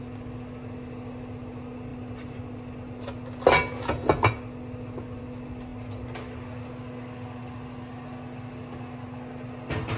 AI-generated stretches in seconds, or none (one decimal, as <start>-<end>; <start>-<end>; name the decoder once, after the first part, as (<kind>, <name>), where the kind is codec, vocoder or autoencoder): none